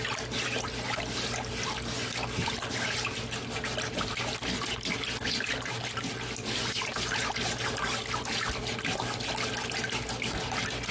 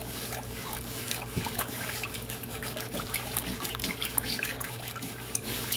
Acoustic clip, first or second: first